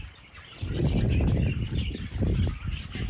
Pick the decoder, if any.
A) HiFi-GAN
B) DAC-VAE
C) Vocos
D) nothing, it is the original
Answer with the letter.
D